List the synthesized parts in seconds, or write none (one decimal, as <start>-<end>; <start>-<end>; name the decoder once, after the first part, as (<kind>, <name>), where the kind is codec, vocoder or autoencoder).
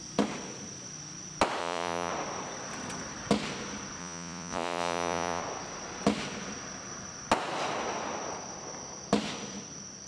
1.6-2.1 (vocoder, Vocos); 4.0-5.4